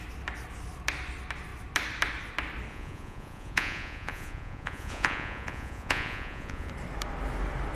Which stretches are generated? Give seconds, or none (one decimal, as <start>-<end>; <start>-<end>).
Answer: 2.7-6.7